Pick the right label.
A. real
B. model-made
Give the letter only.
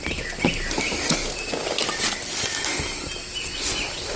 A